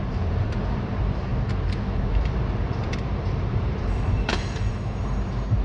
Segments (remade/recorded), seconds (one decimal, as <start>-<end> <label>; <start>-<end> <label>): 0.0-5.6 remade